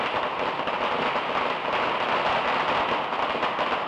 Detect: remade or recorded recorded